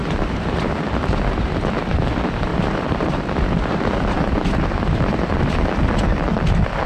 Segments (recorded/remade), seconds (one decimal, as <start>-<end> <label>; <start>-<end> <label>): 0.0-0.9 remade; 0.9-2.5 recorded; 2.5-5.6 remade; 5.6-6.9 recorded